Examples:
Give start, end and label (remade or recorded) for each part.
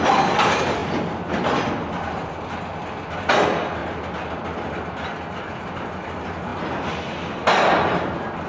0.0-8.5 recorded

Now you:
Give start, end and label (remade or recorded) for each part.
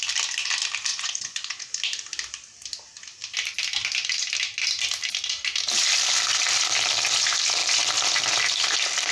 0.0-0.9 recorded; 0.9-1.7 remade; 1.7-9.1 recorded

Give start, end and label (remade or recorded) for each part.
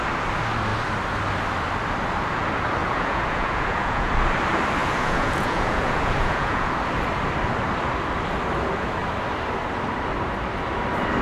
0.0-2.8 recorded; 2.8-4.1 remade; 4.1-4.8 recorded; 4.8-6.7 remade; 6.7-11.2 recorded